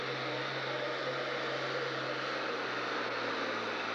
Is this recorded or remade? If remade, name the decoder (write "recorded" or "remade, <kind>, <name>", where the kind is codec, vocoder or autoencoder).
recorded